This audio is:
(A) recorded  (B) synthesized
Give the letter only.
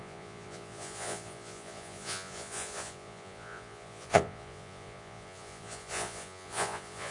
B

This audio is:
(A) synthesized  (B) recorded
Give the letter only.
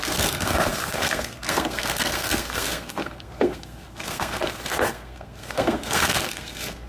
A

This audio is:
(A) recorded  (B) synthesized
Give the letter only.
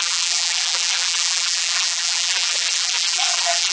B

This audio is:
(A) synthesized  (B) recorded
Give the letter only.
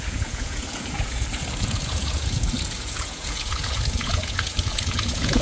A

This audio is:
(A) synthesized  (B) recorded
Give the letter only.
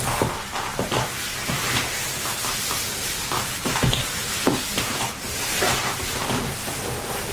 A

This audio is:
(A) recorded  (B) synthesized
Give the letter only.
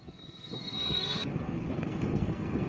B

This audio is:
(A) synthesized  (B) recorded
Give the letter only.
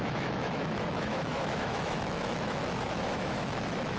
A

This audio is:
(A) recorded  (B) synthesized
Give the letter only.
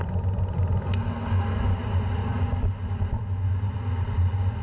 A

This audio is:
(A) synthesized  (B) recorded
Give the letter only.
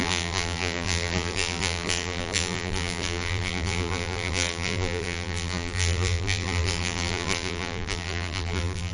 A